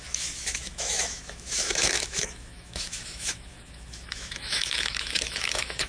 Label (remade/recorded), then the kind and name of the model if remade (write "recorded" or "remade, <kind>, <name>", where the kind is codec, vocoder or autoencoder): remade, autoencoder, DAC-VAE